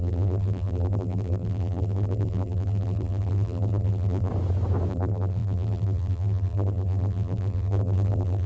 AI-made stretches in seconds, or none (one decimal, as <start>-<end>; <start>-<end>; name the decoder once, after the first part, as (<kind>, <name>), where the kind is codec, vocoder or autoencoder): 0.0-4.3 (vocoder, BigVGAN v2); 4.9-8.5